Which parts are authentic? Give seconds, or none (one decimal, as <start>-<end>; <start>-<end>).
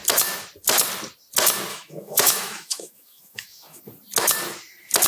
0.0-1.7; 3.8-5.1